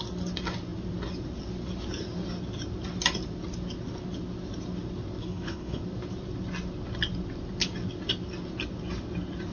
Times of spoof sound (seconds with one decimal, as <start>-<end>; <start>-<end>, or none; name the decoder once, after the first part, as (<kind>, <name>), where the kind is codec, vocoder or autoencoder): 5.2-5.8 (codec, HILCodec)